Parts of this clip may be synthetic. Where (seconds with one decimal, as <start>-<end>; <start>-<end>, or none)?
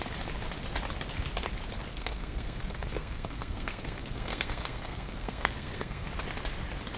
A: 1.9-6.1